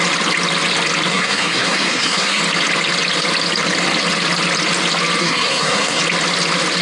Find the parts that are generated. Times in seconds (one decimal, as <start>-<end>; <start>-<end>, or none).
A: 1.1-2.4; 5.2-6.0